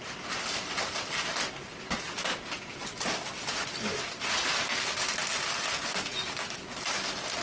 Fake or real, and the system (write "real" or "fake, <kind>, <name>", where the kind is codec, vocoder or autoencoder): real